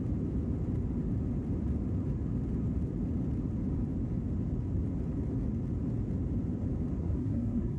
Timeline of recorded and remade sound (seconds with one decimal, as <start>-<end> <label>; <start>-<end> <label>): 0.0-7.0 recorded; 7.0-7.8 remade